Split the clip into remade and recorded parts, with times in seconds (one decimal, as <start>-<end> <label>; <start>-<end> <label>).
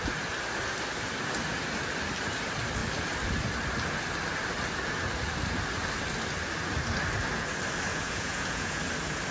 0.0-7.9 recorded; 7.9-8.8 remade; 8.8-9.3 recorded